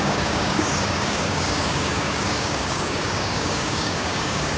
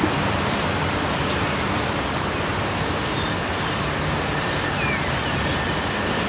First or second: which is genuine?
second